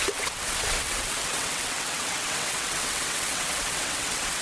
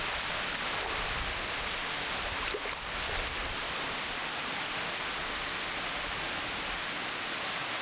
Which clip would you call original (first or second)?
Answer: second